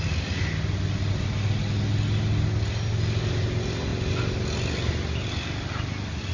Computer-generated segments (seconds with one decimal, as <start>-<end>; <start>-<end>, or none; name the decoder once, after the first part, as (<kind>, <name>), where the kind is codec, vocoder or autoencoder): none